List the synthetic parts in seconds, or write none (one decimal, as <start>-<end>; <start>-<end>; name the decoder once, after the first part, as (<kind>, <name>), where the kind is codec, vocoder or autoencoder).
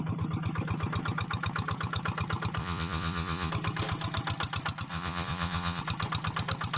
2.6-3.5 (vocoder, Vocos); 4.9-5.8